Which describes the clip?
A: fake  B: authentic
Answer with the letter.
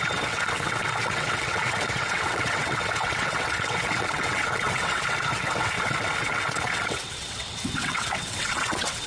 A